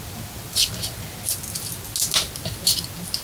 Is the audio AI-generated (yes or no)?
no